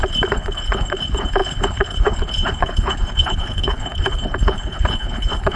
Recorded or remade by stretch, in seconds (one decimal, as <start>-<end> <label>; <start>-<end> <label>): 0.0-5.6 remade